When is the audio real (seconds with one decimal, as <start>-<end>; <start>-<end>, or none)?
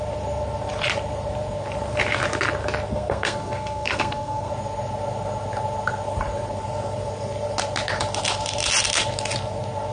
0.0-2.9; 4.5-9.9